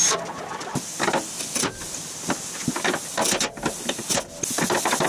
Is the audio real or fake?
real